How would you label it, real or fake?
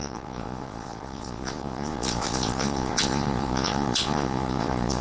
fake